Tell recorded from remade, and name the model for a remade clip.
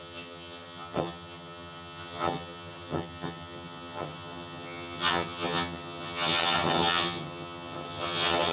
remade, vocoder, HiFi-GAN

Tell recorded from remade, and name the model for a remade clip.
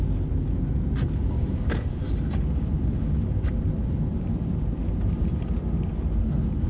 recorded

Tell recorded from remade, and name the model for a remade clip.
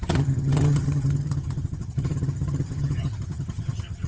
remade, vocoder, HiFi-GAN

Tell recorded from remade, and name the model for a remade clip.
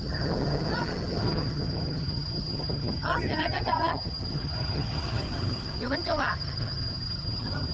remade, vocoder, HiFi-GAN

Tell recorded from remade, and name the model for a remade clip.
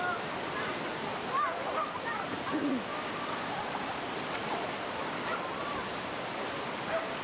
recorded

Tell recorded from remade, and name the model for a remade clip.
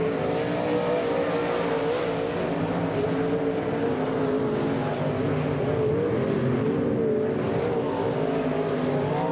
recorded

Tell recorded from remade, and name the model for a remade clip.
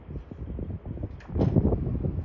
recorded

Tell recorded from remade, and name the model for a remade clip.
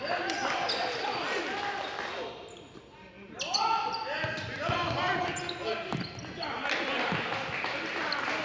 recorded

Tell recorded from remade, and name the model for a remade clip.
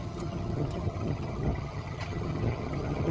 remade, vocoder, HiFi-GAN